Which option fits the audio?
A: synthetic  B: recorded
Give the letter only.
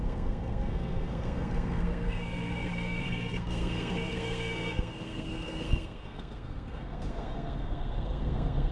A